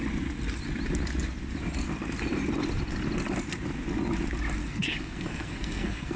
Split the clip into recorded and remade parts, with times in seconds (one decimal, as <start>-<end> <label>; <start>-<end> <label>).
0.0-4.6 recorded; 4.6-6.2 remade

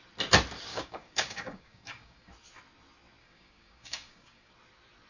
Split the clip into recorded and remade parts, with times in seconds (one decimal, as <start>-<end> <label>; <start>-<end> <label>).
0.0-0.7 recorded; 0.7-2.3 remade; 2.3-3.2 recorded; 3.2-4.5 remade; 4.5-5.1 recorded

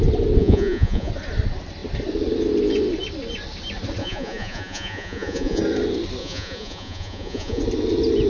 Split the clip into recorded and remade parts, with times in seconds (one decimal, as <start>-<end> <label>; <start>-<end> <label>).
0.0-0.4 recorded; 0.4-1.1 remade; 1.1-4.0 recorded; 4.0-5.6 remade; 5.6-6.2 recorded; 6.2-7.6 remade; 7.6-8.3 recorded

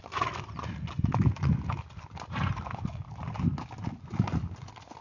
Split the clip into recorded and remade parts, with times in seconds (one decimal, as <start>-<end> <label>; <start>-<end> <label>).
0.0-5.0 recorded

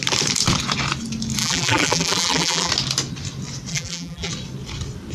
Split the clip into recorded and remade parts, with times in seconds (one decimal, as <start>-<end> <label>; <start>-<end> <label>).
0.0-1.4 recorded; 1.4-2.7 remade; 2.7-3.7 recorded; 3.7-4.3 remade; 4.3-5.1 recorded

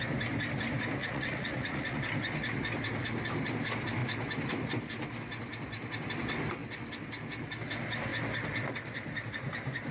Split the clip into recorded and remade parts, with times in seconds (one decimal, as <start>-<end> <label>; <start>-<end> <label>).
0.0-1.0 recorded; 1.0-2.0 remade; 2.0-9.9 recorded

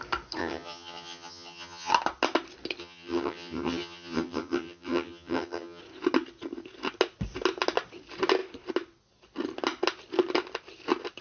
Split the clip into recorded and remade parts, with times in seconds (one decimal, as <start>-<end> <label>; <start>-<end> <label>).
0.0-0.4 recorded; 0.4-1.9 remade; 1.9-2.8 recorded; 2.8-5.8 remade; 5.8-11.2 recorded

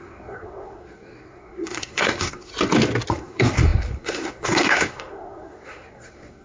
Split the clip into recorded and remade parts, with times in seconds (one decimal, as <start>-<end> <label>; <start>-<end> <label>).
0.0-2.5 remade; 2.5-3.1 recorded; 3.1-6.4 remade